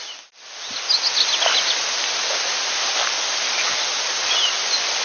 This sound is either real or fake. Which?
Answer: real